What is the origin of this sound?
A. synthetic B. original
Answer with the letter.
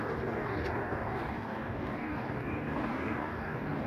A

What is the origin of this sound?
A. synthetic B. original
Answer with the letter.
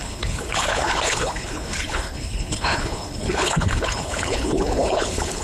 A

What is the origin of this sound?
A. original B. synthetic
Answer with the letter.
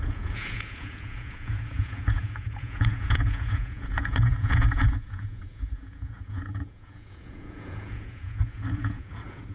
B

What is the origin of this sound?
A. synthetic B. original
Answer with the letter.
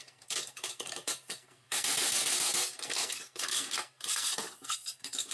A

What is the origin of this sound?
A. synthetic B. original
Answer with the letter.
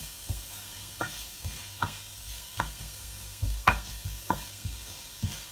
A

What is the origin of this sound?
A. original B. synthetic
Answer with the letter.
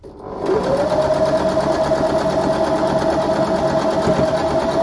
A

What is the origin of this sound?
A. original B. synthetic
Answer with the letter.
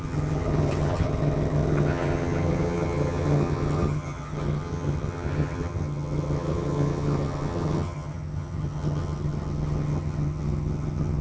B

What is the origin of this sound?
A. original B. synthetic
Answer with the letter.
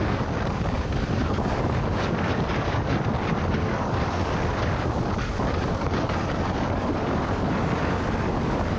B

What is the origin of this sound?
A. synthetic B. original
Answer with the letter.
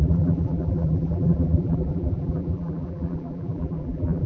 A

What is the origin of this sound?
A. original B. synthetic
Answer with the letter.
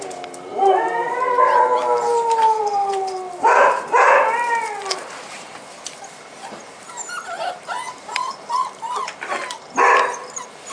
B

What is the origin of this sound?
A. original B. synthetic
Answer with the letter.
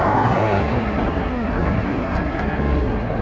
B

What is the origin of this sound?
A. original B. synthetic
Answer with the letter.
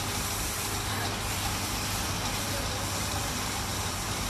A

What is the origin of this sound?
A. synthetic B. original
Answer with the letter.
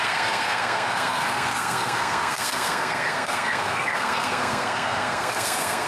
A